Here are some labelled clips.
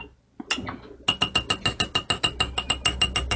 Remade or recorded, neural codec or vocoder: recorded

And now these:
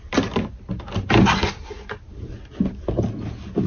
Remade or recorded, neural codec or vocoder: recorded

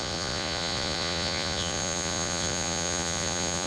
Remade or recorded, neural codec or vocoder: remade, vocoder, Vocos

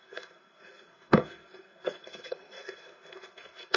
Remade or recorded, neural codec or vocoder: remade, codec, SNAC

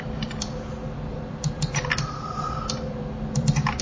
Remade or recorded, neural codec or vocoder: remade, vocoder, BigVGAN v2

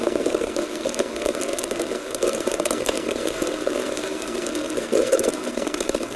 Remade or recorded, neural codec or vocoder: remade, codec, SNAC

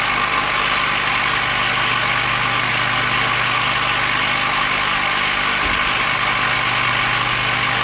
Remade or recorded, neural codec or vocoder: recorded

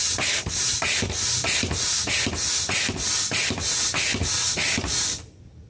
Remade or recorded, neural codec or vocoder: recorded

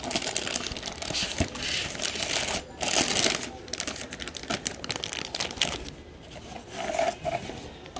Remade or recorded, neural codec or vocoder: recorded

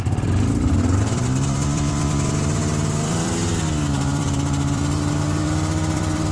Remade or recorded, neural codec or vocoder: remade, vocoder, BigVGAN v2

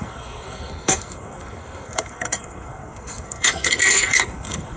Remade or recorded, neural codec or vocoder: remade, codec, SNAC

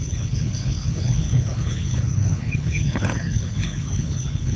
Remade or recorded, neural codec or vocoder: remade, codec, HILCodec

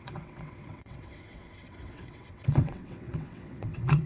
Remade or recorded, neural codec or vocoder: remade, vocoder, WaveNeXt